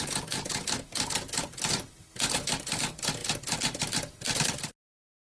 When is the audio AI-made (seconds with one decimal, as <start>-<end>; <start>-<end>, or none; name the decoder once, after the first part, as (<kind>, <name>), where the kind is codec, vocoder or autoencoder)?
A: none